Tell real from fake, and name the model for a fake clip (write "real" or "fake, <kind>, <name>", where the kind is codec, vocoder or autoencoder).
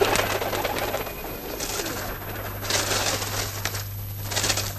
real